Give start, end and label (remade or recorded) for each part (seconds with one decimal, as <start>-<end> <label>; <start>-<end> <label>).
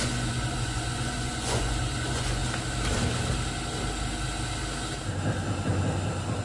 0.0-2.4 remade; 2.4-6.4 recorded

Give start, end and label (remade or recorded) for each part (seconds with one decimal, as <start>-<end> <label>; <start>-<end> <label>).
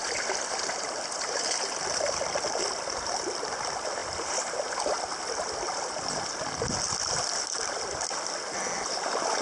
0.0-9.4 recorded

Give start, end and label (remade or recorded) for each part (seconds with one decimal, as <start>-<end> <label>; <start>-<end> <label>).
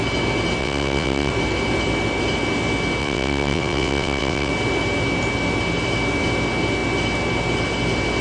0.0-0.6 recorded; 0.6-1.3 remade; 1.3-3.0 recorded; 3.0-4.5 remade; 4.5-8.2 recorded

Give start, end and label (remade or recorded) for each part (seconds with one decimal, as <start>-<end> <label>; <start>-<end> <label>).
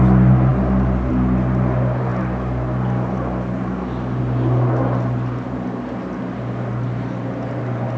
0.0-8.0 recorded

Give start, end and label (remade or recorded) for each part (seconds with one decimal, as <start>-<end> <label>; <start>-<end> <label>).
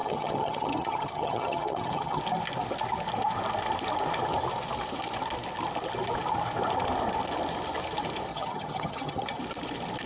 0.0-2.2 remade; 2.2-8.3 recorded; 8.3-9.4 remade; 9.4-10.1 recorded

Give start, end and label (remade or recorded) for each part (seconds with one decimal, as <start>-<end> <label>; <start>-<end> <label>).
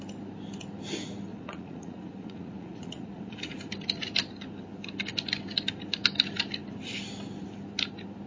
0.0-1.3 recorded; 1.3-3.6 remade; 3.6-8.3 recorded